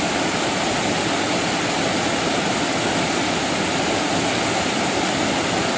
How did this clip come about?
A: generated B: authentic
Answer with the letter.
B